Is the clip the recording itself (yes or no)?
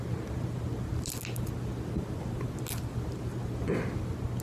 yes